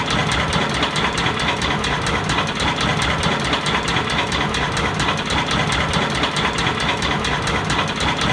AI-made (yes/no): no